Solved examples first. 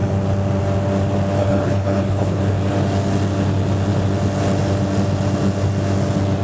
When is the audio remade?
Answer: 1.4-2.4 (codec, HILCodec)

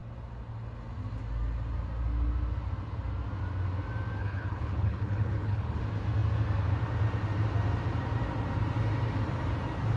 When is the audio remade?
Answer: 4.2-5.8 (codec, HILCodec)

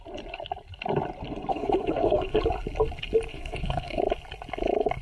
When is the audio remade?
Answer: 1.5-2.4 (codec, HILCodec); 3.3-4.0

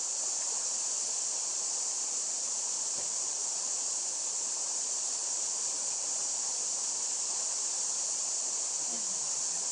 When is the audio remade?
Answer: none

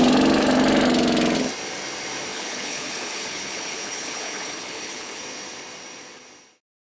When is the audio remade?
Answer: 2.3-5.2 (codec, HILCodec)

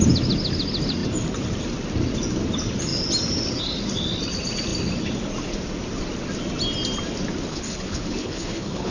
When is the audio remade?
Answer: 7.5-8.9 (codec, HILCodec)